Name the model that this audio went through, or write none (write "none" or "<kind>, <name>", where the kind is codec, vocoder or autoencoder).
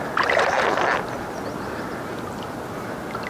none